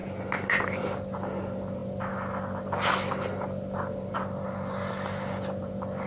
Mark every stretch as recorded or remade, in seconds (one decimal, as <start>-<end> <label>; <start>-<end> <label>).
0.0-6.1 recorded

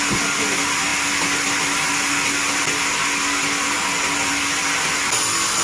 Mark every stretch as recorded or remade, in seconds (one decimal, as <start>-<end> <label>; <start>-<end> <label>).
0.0-5.6 recorded

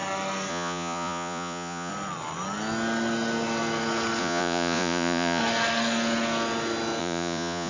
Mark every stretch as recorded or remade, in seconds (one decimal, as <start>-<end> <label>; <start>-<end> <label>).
0.0-0.5 recorded; 0.5-1.9 remade; 1.9-4.2 recorded; 4.2-5.4 remade; 5.4-7.0 recorded; 7.0-7.7 remade

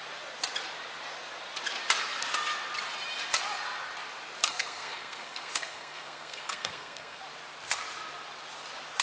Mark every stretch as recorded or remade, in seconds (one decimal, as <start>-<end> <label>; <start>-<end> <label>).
0.0-4.4 recorded; 4.4-7.2 remade; 7.2-9.0 recorded

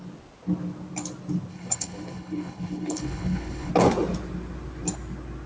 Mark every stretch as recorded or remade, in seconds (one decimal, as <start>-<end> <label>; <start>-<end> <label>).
0.0-1.5 recorded; 1.5-3.7 remade; 3.7-5.5 recorded